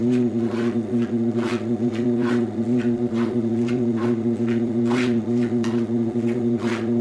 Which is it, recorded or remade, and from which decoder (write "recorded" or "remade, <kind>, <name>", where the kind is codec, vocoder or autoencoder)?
remade, vocoder, Vocos